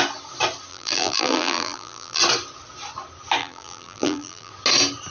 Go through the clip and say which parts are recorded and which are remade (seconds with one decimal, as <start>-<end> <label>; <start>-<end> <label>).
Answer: 0.0-0.7 recorded; 0.7-2.2 remade; 2.2-3.4 recorded; 3.4-4.5 remade; 4.5-5.1 recorded